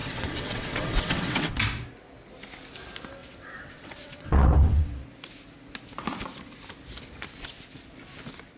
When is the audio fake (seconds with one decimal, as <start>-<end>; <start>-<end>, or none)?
0.0-1.6; 3.2-4.9